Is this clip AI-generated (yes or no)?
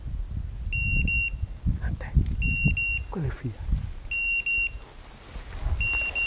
no